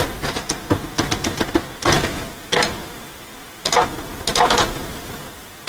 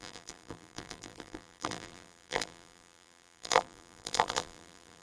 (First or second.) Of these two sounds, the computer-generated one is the second